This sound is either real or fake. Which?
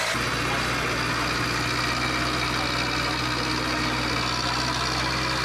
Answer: real